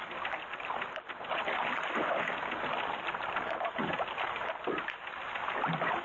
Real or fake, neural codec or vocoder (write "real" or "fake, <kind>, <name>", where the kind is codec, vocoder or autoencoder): real